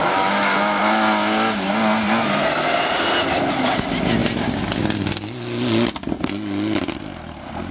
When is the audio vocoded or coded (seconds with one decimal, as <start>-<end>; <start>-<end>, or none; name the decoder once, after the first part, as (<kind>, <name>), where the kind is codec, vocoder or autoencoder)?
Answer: 0.0-0.8 (autoencoder, DAC-VAE)